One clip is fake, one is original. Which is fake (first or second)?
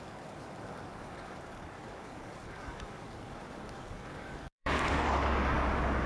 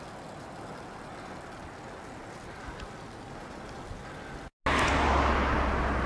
first